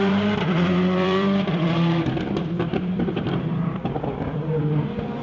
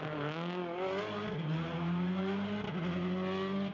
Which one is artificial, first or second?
first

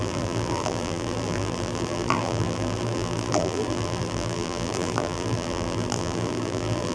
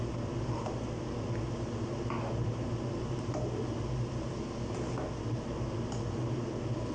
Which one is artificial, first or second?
first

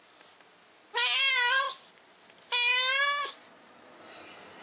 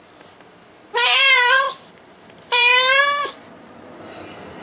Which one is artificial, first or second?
second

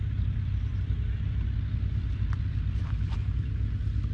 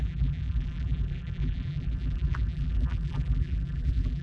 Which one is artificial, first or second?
second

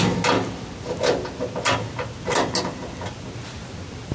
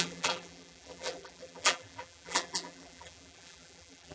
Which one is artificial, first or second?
second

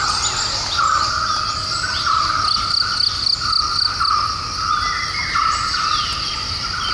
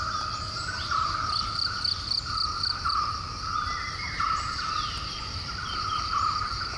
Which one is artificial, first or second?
second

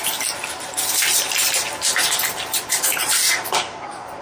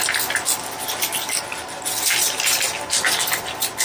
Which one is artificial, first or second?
first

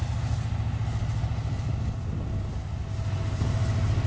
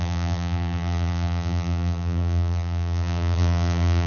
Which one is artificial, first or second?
second